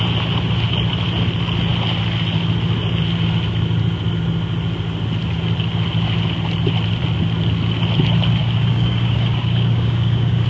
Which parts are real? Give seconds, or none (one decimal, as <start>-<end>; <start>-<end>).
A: 0.0-8.4

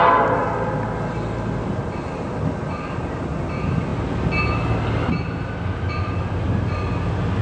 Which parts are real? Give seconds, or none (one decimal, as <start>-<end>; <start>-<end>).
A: 0.0-7.4

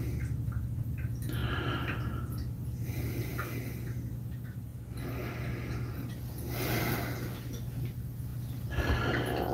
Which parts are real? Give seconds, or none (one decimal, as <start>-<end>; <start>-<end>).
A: 0.0-1.4; 2.7-9.5

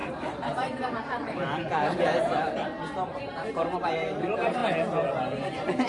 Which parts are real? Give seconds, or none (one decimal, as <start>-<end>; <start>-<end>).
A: 4.6-5.9